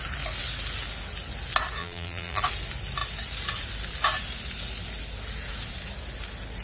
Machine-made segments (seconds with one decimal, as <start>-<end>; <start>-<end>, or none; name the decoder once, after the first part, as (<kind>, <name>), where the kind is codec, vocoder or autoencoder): 1.8-2.4 (vocoder, BigVGAN v2)